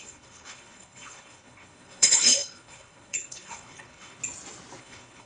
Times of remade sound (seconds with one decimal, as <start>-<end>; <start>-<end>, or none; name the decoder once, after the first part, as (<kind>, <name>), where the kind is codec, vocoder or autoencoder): 0.0-4.2 (codec, HILCodec); 4.8-5.3